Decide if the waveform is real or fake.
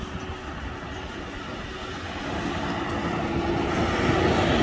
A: real